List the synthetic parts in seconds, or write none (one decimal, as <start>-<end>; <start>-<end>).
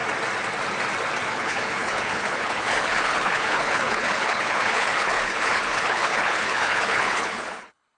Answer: 1.3-8.0